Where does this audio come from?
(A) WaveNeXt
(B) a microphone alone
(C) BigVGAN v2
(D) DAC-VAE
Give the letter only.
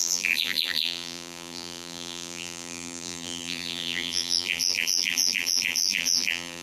C